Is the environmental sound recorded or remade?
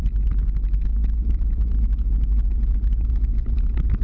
recorded